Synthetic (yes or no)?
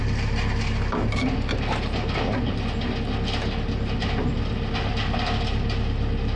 no